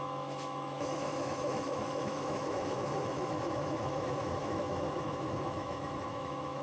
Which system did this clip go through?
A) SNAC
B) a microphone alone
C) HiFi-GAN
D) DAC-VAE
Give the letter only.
D